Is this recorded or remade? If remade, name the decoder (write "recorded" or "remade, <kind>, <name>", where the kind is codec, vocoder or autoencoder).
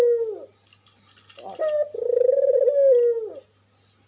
recorded